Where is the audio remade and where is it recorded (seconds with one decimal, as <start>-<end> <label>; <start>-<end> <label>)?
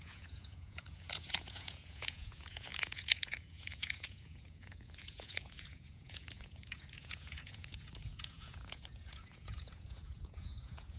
0.0-11.0 remade